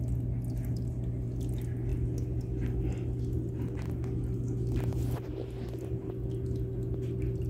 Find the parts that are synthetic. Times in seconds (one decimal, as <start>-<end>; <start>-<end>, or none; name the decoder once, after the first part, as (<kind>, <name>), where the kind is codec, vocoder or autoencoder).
none